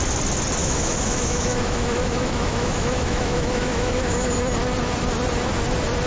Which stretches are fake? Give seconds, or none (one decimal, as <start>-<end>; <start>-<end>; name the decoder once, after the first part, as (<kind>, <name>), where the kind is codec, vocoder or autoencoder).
0.6-4.3 (autoencoder, DAC-VAE)